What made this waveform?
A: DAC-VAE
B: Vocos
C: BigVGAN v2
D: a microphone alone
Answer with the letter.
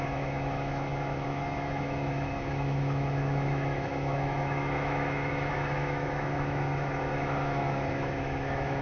A